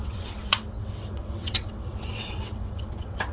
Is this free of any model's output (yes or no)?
no